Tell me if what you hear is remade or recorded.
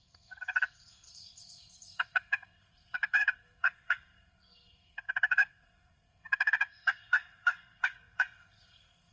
remade